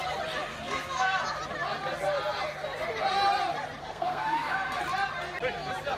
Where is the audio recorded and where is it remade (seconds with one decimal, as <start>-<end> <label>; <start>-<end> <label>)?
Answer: 0.0-0.5 recorded; 0.5-1.2 remade; 1.2-3.8 recorded; 3.8-4.8 remade; 4.8-6.0 recorded